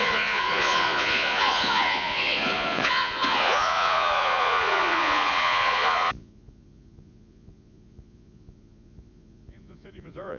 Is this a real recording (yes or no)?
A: no